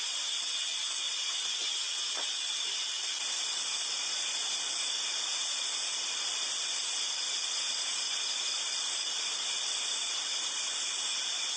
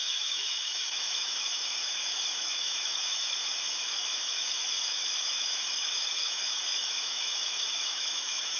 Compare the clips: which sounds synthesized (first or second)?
second